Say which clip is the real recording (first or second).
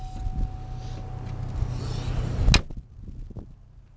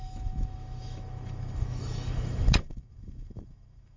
first